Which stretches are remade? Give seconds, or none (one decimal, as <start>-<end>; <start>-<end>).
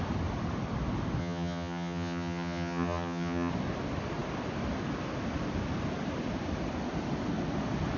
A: 1.2-3.5